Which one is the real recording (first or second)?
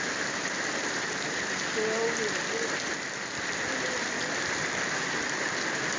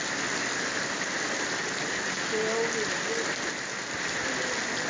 second